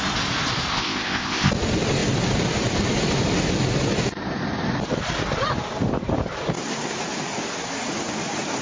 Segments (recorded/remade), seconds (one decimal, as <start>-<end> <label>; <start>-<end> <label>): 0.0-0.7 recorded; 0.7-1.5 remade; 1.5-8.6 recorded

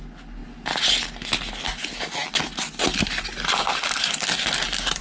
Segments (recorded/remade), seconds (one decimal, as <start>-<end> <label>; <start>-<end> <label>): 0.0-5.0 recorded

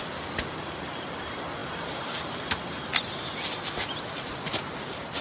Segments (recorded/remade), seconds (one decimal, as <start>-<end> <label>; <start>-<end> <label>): 0.0-5.2 recorded